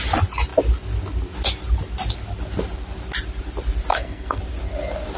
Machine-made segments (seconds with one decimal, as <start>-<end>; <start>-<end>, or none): 3.9-4.4